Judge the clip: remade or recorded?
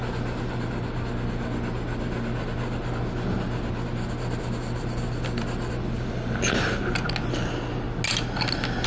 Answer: recorded